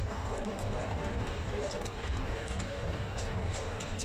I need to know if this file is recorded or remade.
remade